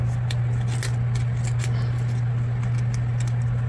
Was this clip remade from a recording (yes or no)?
no